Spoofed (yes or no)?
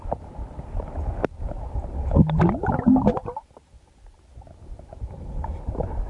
no